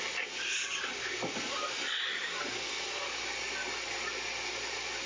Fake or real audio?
real